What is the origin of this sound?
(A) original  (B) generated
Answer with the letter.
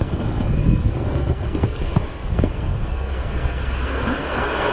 B